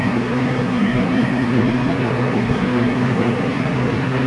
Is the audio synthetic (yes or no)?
yes